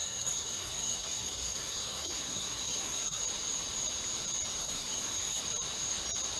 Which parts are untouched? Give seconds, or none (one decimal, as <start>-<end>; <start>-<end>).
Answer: 3.2-4.6; 5.4-6.4